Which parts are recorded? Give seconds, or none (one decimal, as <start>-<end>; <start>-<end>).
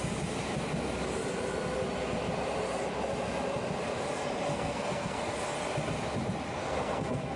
0.0-4.5; 5.2-6.6